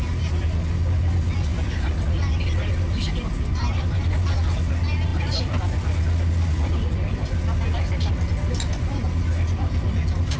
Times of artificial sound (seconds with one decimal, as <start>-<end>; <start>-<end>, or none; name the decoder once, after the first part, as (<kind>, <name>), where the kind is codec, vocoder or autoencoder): none